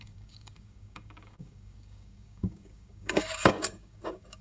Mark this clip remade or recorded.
remade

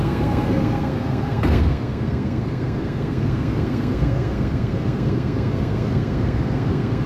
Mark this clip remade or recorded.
remade